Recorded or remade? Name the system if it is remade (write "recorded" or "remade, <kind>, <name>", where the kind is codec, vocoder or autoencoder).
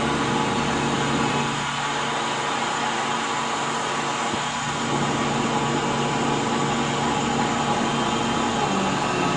recorded